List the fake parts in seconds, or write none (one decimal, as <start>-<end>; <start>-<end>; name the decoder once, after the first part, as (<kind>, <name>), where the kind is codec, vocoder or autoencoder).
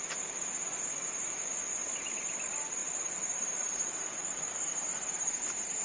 1.8-2.3 (vocoder, BigVGAN v2); 2.8-4.7